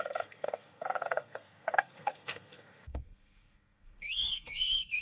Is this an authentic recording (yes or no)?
no